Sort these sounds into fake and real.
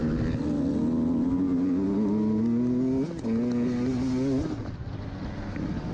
real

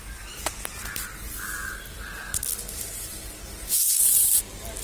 real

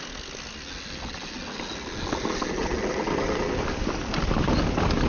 real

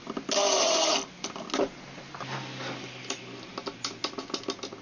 real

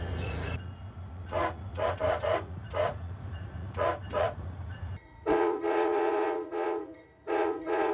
fake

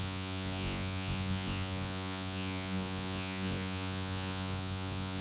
fake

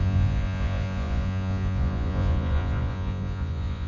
fake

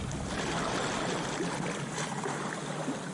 real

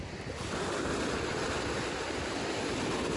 real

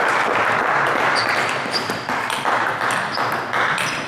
real